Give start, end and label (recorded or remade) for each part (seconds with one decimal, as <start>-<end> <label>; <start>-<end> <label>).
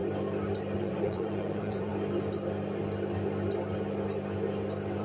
0.0-0.8 recorded; 0.8-1.9 remade; 1.9-5.0 recorded